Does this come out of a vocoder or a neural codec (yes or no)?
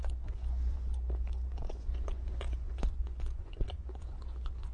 yes